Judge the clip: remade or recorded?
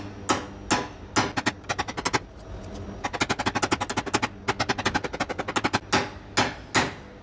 recorded